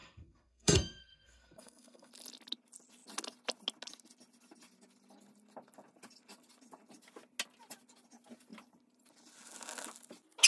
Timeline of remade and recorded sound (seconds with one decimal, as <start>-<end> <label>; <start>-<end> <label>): 0.0-2.1 remade; 2.1-10.5 recorded

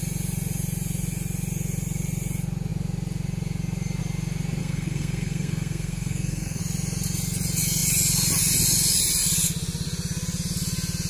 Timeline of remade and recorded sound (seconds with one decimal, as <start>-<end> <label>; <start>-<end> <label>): 0.0-4.6 recorded; 4.6-6.6 remade; 6.6-11.1 recorded

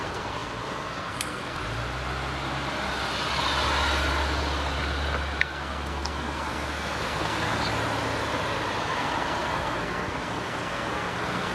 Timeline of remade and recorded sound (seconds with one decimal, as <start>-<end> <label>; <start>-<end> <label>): 0.0-1.6 remade; 1.6-5.4 recorded; 5.4-7.7 remade; 7.7-8.8 recorded; 8.8-11.5 remade

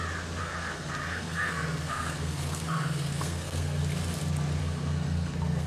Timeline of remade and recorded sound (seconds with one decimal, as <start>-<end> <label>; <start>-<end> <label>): 0.0-0.4 recorded; 0.4-3.8 remade; 3.8-4.6 recorded; 4.6-5.7 remade

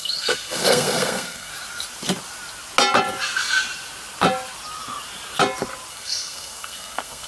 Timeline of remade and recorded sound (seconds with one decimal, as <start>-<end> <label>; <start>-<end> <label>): 0.0-1.5 remade; 1.5-5.9 recorded; 5.9-7.3 remade

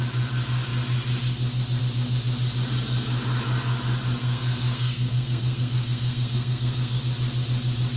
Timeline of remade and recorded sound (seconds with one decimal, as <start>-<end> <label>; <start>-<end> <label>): 0.0-4.2 recorded; 4.2-7.0 remade; 7.0-8.0 recorded

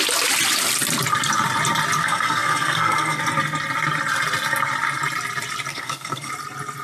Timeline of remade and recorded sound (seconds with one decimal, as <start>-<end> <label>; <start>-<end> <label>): 0.0-2.0 recorded; 2.0-3.2 remade; 3.2-5.7 recorded; 5.7-6.3 remade; 6.3-6.8 recorded